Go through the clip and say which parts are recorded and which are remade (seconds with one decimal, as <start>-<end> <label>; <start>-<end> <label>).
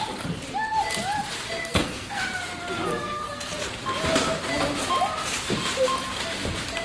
0.0-1.6 recorded; 1.6-2.2 remade; 2.2-2.9 recorded; 2.9-3.5 remade; 3.5-6.8 recorded